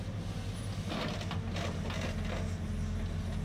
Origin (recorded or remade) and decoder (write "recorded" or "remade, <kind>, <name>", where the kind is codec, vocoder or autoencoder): recorded